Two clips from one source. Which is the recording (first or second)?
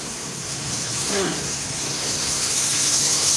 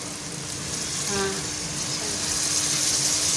second